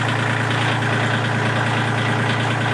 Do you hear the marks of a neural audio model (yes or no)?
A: no